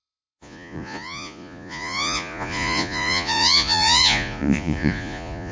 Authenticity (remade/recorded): remade